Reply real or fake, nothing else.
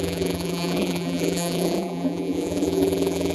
fake